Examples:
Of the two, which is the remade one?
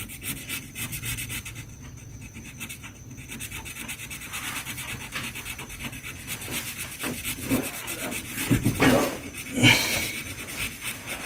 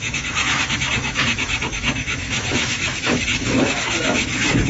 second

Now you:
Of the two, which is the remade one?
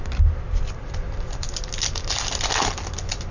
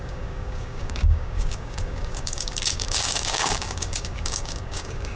second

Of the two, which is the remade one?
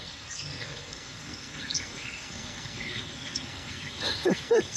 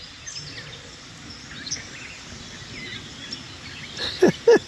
first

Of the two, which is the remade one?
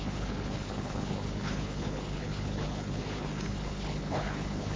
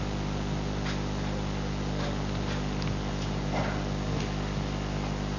first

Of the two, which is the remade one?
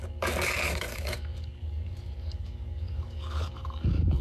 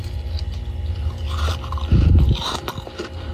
first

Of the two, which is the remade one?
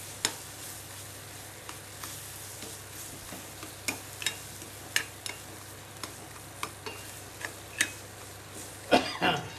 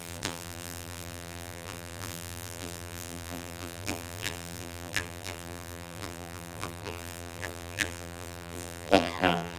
second